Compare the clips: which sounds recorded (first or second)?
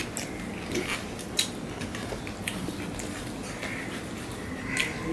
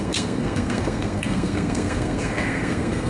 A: first